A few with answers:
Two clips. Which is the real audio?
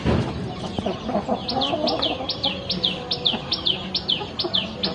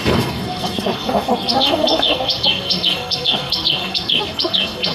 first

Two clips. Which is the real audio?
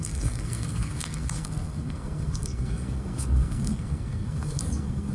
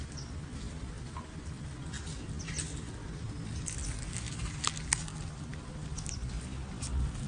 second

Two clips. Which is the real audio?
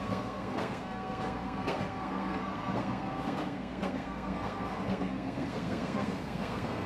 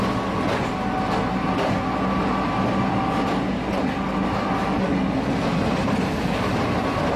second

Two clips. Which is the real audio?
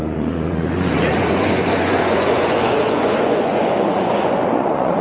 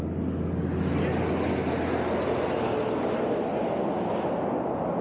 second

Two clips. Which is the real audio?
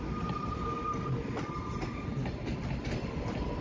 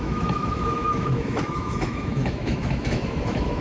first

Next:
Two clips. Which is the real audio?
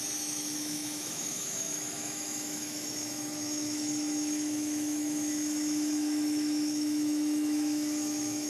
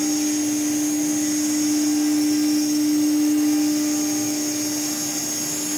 second